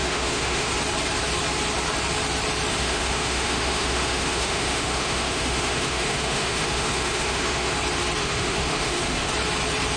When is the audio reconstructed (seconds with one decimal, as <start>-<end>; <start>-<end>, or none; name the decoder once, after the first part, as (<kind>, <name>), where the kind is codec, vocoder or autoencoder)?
0.0-0.7 (autoencoder, DAC-VAE); 2.7-7.7; 8.2-9.3